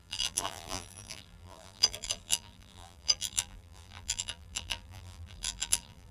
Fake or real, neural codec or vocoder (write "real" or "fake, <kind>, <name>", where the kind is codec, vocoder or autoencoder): fake, vocoder, BigVGAN v2